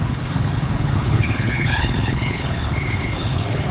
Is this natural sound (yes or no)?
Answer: no